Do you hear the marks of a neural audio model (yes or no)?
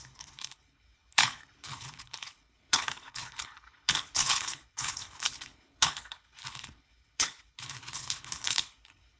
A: yes